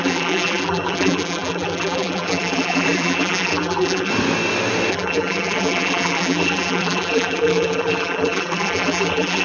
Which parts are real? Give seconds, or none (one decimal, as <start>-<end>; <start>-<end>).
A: 4.1-4.9